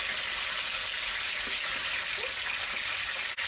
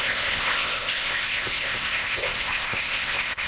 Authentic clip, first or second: first